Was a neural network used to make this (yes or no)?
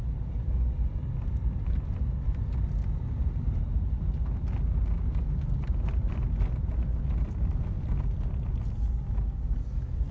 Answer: no